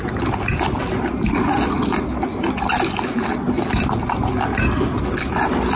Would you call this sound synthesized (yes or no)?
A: no